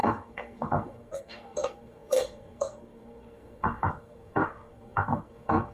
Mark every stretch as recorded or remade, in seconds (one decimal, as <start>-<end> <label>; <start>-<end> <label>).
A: 0.0-5.7 remade